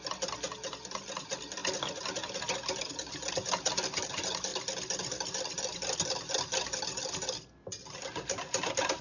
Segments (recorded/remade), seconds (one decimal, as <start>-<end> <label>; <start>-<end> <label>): 0.0-9.0 recorded